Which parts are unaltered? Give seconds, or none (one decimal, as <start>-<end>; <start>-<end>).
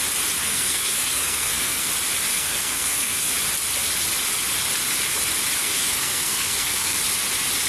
0.0-0.4; 1.9-2.3; 3.3-5.6; 7.0-7.7